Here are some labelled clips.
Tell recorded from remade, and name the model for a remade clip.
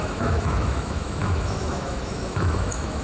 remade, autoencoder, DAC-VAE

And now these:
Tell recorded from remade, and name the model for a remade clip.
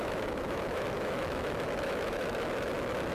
remade, autoencoder, DAC-VAE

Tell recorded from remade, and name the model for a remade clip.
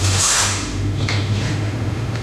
remade, autoencoder, DAC-VAE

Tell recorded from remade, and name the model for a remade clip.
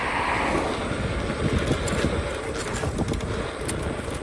recorded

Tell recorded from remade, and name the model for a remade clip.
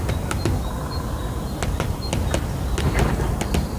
recorded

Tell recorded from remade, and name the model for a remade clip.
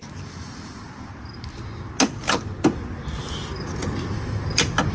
recorded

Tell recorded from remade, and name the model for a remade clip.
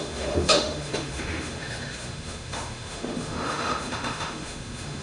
remade, autoencoder, DAC-VAE